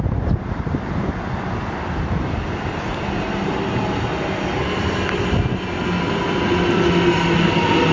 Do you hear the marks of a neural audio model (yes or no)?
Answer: no